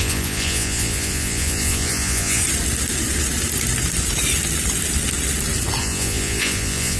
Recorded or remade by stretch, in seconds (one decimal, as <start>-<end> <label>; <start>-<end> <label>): 0.0-2.4 remade; 2.4-5.8 recorded; 5.8-7.0 remade